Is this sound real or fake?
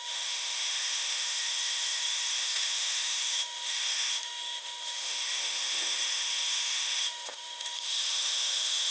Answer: fake